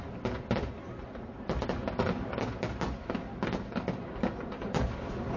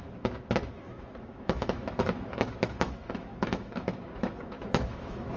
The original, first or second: first